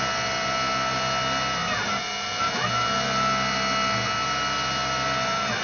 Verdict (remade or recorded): recorded